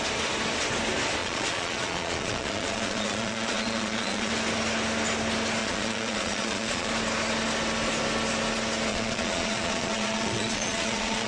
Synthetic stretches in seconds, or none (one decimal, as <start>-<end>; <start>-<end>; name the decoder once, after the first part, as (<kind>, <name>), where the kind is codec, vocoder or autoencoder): 1.2-4.3 (vocoder, Vocos); 5.6-6.9; 8.9-11.3